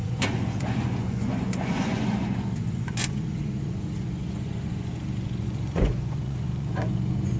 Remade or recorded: remade